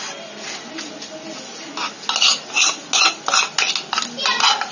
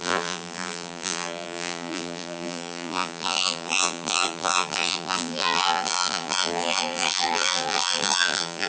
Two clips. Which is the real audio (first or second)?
first